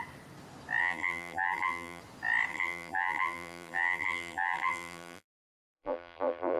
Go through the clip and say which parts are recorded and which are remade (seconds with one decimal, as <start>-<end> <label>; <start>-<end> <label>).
0.0-0.8 recorded; 0.8-2.0 remade; 2.0-2.5 recorded; 2.5-6.6 remade